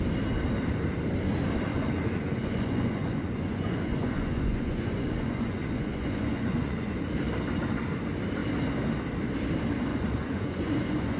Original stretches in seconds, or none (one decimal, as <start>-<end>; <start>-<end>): 0.0-1.7; 6.9-9.9